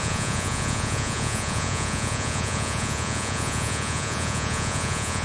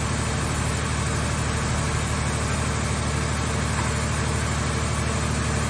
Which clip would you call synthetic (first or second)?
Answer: first